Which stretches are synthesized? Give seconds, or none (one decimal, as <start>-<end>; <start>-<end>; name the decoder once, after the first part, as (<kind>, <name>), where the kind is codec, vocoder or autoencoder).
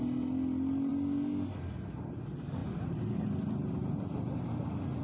none